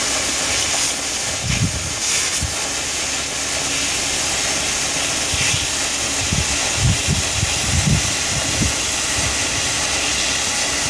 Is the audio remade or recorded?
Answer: recorded